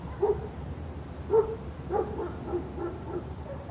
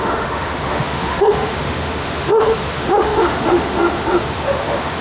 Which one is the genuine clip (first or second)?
first